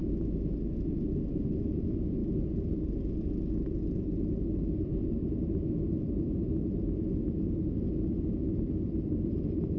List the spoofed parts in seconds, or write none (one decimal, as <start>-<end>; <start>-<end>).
none